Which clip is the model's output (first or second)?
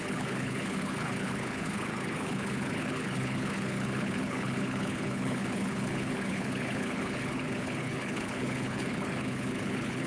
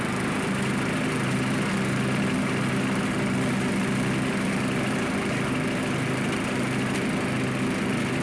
first